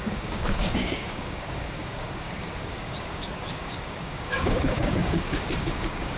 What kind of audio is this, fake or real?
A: fake